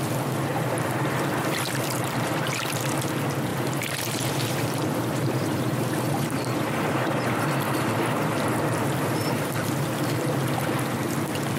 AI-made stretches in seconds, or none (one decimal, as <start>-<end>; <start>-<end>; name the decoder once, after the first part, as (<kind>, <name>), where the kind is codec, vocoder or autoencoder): 0.5-1.3 (vocoder, BigVGAN v2); 3.5-8.6